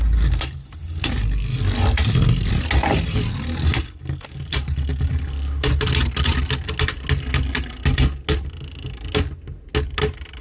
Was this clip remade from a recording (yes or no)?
no